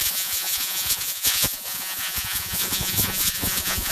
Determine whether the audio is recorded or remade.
remade